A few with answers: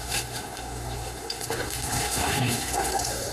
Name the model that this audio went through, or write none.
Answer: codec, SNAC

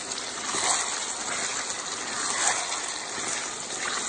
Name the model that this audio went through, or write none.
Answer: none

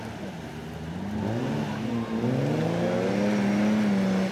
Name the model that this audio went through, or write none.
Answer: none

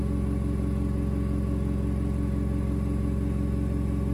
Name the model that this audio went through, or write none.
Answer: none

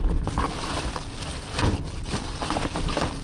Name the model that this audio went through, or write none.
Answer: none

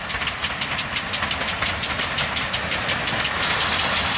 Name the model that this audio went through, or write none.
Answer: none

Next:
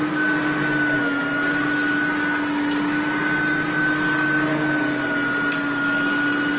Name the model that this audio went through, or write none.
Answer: none